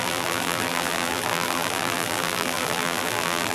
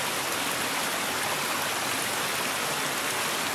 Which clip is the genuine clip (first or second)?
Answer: second